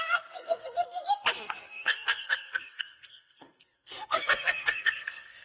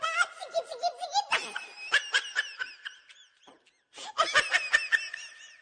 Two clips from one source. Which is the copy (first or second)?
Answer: first